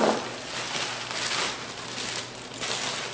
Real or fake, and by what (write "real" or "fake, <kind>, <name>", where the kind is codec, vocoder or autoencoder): real